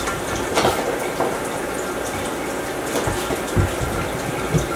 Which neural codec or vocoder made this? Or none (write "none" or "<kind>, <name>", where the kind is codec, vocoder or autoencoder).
none